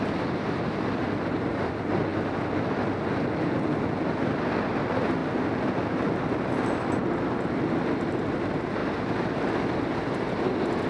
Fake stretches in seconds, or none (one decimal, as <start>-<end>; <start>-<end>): none